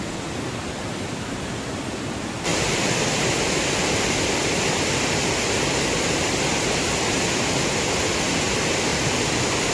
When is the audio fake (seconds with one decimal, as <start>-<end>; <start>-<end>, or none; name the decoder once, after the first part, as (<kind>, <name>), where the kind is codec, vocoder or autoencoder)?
2.5-3.0 (vocoder, BigVGAN v2)